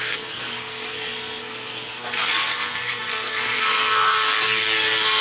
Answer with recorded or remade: remade